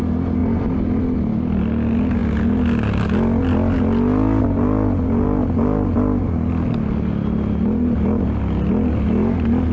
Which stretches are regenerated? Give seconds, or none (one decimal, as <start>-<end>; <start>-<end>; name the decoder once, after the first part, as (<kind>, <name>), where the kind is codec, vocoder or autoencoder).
none